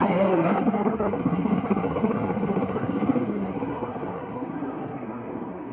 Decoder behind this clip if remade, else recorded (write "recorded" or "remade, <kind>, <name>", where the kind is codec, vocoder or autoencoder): remade, codec, SNAC